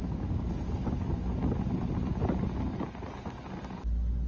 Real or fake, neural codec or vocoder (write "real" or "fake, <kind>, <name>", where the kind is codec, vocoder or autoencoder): real